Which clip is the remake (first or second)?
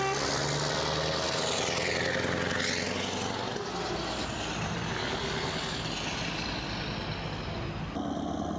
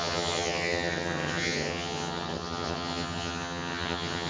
second